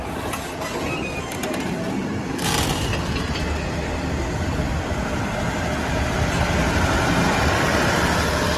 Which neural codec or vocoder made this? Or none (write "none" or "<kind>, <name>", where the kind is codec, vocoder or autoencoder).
none